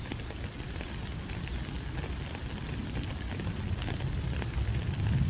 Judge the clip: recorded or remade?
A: recorded